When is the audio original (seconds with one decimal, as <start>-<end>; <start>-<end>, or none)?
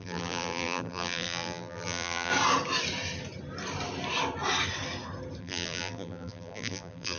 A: 2.3-5.4